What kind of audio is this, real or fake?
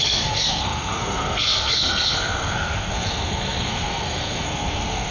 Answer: fake